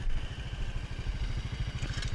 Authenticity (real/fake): real